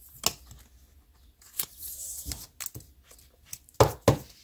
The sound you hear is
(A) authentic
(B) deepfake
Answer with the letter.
A